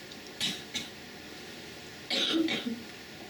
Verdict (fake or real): real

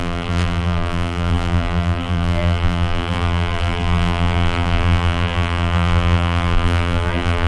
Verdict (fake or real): fake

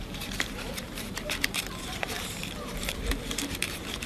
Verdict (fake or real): fake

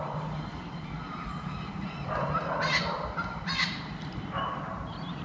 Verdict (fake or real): fake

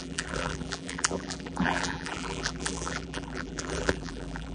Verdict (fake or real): fake